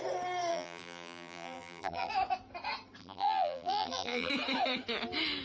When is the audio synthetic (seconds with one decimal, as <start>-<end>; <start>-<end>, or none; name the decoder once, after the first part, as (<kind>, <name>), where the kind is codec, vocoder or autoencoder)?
0.5-2.1 (vocoder, BigVGAN v2); 3.0-4.3